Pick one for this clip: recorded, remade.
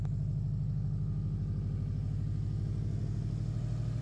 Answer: recorded